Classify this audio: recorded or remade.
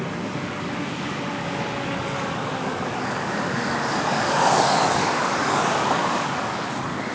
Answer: remade